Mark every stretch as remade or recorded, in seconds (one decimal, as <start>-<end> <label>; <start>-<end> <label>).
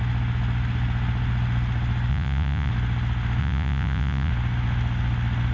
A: 0.0-2.1 recorded; 2.1-2.7 remade; 2.7-3.4 recorded; 3.4-4.3 remade; 4.3-5.5 recorded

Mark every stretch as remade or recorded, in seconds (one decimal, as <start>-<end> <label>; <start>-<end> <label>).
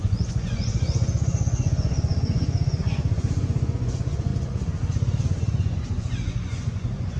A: 0.0-7.2 remade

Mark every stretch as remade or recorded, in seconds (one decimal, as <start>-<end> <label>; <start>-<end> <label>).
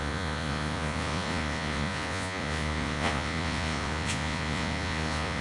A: 0.0-5.4 remade